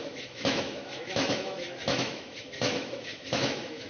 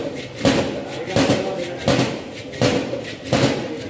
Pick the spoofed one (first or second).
first